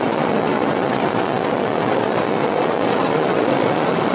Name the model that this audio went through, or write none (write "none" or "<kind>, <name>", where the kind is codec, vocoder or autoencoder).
vocoder, Vocos